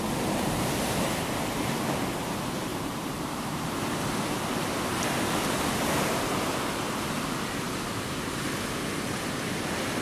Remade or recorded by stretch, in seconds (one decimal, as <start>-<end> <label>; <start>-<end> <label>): 0.0-2.7 recorded; 2.7-3.8 remade; 3.8-10.0 recorded